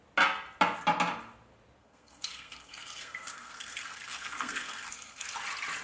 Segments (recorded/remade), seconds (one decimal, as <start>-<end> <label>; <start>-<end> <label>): 0.0-1.8 recorded; 1.8-5.3 remade; 5.3-5.8 recorded